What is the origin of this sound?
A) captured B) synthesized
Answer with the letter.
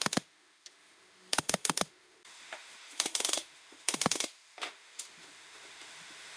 B